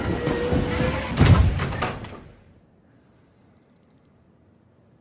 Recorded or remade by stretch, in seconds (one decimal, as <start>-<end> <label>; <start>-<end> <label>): 0.0-1.4 recorded; 1.4-4.4 remade; 4.4-5.0 recorded